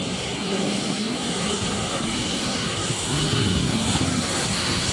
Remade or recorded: remade